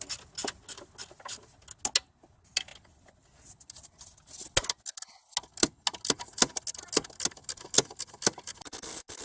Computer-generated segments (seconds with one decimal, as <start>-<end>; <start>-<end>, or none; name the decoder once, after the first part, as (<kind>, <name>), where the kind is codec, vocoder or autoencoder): none